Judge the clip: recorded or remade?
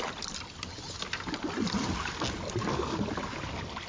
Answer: recorded